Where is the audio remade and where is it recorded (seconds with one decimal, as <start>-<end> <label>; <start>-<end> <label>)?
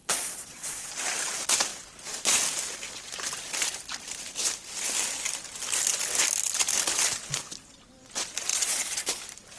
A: 0.0-0.9 remade; 0.9-8.5 recorded; 8.5-9.2 remade; 9.2-9.6 recorded